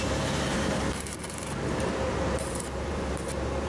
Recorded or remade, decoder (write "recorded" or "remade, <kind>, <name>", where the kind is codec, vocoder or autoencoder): remade, vocoder, BigVGAN v2